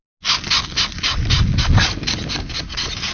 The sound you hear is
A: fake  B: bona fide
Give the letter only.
B